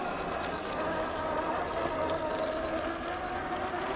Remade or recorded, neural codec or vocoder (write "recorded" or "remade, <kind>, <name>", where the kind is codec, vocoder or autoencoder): recorded